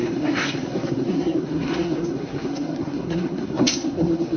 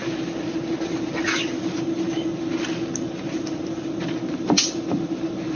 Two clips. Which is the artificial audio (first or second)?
first